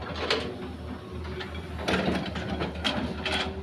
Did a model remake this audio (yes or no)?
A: no